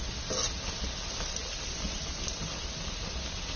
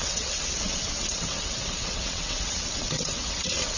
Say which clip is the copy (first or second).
second